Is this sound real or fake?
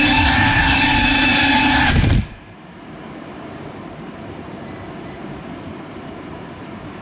fake